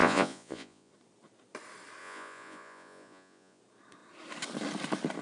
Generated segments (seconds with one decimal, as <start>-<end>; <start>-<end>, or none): 0.0-0.9; 2.0-3.6